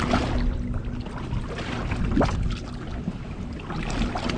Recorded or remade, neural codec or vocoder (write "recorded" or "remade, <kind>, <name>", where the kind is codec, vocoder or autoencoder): recorded